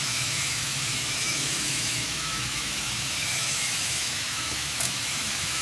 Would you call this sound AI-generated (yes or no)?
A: yes